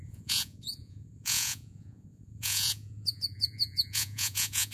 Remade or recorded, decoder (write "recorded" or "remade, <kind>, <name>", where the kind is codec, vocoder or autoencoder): remade, vocoder, Vocos